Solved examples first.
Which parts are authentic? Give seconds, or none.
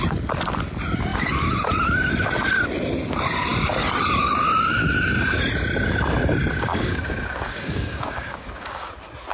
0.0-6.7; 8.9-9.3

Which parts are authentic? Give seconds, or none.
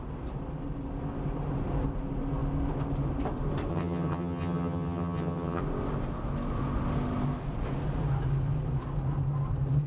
0.0-3.7; 5.6-9.9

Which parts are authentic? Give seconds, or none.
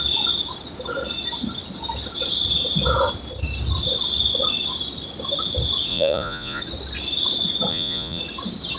0.0-5.9; 6.6-7.7; 8.2-8.8